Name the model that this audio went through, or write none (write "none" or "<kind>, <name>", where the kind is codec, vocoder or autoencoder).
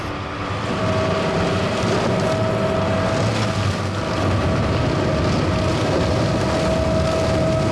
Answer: none